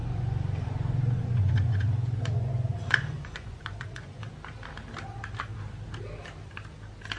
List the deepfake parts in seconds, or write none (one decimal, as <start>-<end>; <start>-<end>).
0.0-4.3